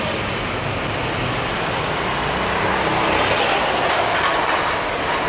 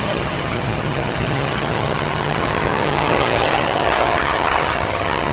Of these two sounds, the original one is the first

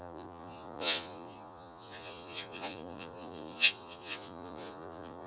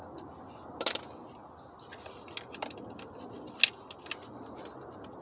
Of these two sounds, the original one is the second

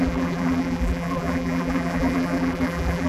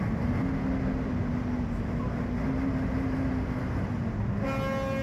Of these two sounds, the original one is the second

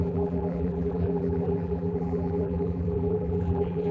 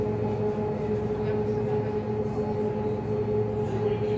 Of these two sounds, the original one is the second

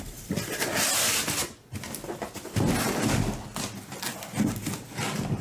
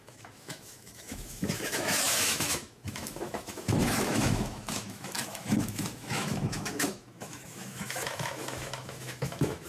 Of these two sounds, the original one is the first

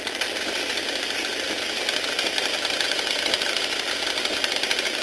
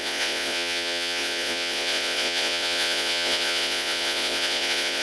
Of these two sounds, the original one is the first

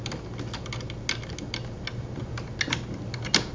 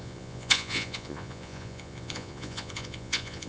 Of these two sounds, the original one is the first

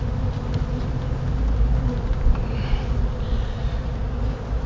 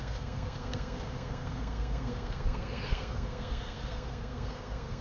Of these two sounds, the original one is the first